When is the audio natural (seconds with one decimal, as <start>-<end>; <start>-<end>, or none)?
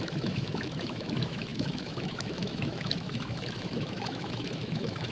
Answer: none